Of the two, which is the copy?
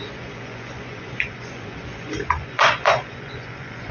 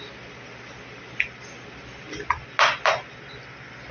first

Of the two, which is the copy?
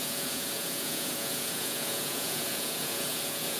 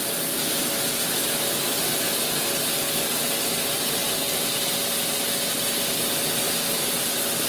first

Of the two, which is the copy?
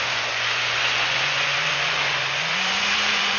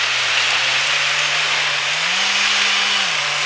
first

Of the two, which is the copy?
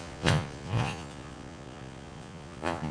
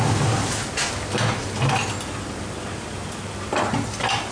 first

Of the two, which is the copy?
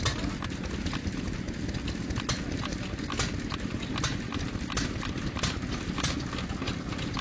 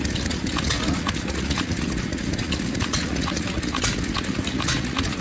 second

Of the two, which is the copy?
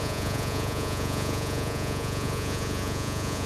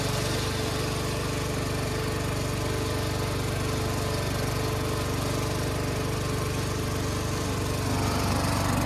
first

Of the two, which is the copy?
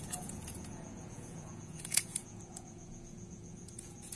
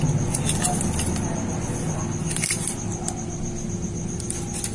first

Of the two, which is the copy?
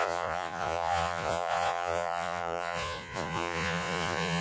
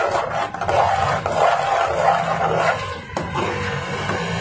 first